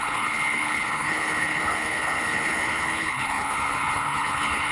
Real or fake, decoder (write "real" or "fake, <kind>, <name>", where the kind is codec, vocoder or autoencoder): fake, codec, HILCodec